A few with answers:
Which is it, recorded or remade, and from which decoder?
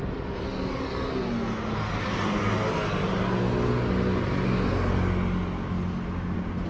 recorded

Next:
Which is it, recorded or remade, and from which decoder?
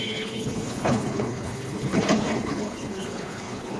remade, codec, HILCodec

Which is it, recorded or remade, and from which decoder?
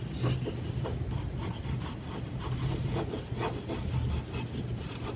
recorded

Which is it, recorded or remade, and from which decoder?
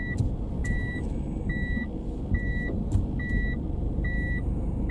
recorded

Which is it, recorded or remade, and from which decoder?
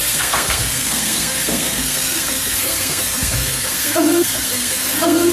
remade, codec, SNAC